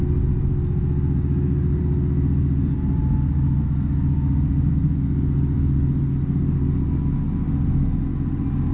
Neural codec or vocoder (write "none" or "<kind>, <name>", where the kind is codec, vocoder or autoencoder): none